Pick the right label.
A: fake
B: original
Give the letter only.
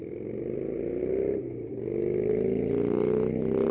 B